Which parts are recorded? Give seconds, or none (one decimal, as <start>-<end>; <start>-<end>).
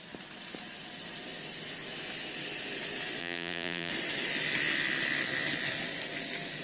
0.0-3.2; 3.9-6.6